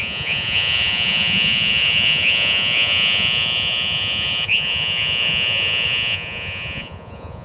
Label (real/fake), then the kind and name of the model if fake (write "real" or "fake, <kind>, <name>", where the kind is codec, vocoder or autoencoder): fake, vocoder, Vocos